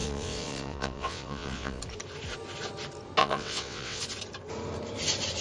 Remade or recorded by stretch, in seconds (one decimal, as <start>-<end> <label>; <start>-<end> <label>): 0.0-1.8 remade; 1.8-3.2 recorded; 3.2-4.0 remade; 4.0-5.4 recorded